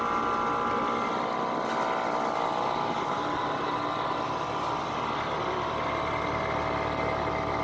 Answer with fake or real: real